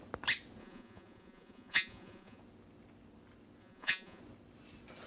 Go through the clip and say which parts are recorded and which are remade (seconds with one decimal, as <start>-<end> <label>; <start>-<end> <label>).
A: 0.0-0.6 recorded; 0.6-2.4 remade; 2.4-3.6 recorded; 3.6-4.2 remade; 4.2-5.1 recorded